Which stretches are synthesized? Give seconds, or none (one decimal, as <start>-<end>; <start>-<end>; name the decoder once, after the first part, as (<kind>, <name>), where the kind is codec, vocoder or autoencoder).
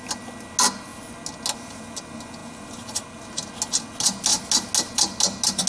2.4-3.2 (vocoder, BigVGAN v2)